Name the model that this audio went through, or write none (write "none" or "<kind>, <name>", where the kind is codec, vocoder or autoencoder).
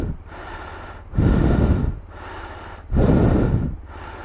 none